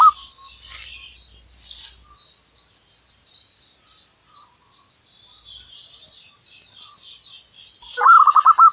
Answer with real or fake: real